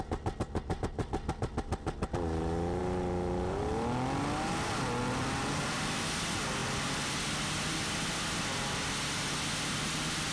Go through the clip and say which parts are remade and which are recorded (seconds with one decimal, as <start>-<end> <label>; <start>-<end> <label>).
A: 0.0-10.3 recorded